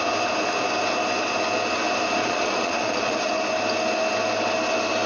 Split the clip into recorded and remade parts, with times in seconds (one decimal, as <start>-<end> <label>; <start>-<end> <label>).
0.0-2.2 recorded; 2.2-3.3 remade; 3.3-5.1 recorded